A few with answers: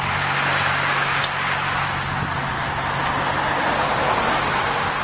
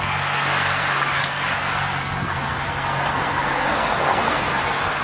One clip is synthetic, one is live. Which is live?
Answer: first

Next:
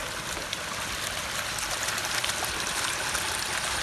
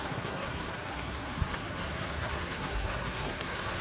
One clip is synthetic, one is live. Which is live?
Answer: first